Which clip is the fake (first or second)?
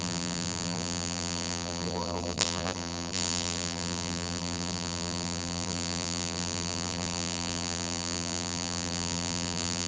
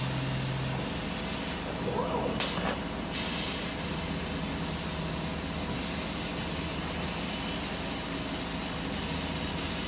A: first